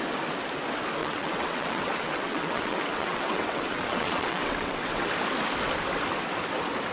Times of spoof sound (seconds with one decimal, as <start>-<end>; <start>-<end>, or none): 1.0-5.1